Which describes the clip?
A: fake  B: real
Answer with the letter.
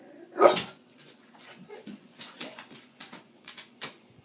A